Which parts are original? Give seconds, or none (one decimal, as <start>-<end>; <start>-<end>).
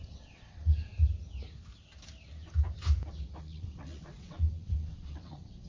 0.9-3.4